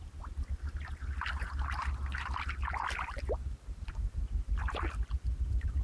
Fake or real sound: real